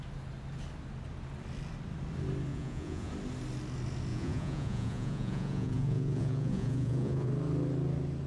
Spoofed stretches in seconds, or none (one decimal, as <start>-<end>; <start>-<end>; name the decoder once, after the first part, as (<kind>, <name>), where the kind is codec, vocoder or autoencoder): 2.5-3.1 (vocoder, Vocos); 4.1-7.3